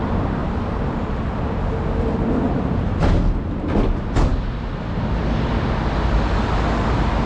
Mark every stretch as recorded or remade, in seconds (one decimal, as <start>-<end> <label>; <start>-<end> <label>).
0.0-0.4 recorded; 0.4-1.2 remade; 1.2-7.3 recorded